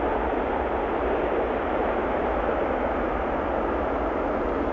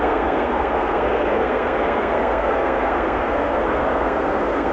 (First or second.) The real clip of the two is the first